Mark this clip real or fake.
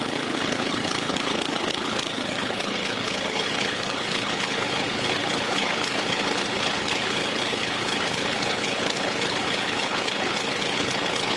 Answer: fake